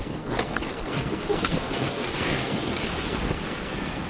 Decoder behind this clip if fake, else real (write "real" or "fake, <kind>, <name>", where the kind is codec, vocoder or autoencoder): fake, codec, SNAC